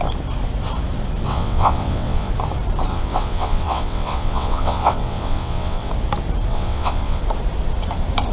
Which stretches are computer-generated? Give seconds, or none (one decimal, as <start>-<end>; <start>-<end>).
1.3-2.3; 2.9-5.9; 6.5-7.2